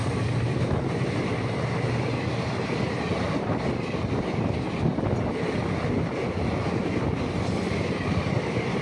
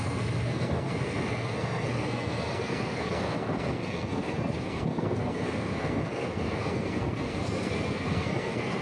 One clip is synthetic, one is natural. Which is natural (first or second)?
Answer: first